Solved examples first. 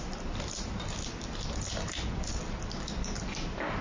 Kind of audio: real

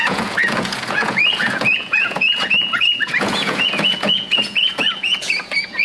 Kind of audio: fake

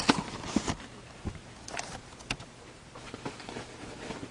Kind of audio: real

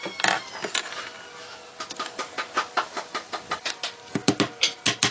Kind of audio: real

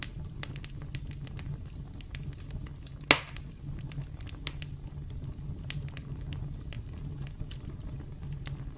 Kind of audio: real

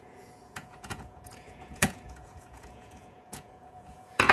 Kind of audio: fake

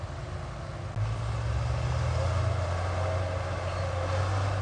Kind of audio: real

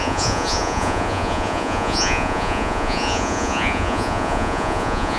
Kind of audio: fake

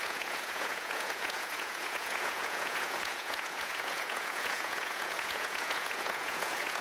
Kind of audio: fake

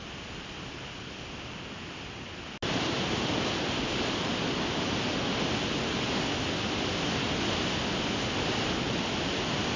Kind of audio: real